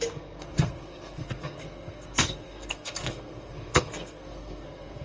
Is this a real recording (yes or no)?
no